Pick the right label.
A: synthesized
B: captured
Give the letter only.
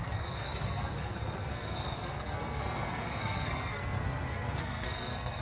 A